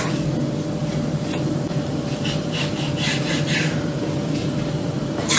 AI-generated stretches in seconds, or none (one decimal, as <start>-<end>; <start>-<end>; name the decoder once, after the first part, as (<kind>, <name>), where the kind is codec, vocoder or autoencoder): 0.8-4.0 (vocoder, BigVGAN v2); 4.4-5.4